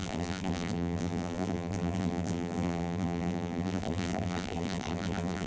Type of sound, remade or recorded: remade